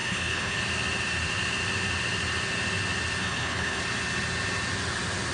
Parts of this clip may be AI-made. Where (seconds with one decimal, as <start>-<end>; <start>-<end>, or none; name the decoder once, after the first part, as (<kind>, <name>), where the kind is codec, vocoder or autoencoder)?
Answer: 0.0-0.6 (codec, HILCodec); 3.2-3.8